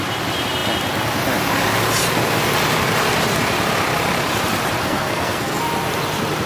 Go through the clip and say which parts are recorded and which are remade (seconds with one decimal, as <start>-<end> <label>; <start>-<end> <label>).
0.0-4.8 recorded; 4.8-5.6 remade; 5.6-6.5 recorded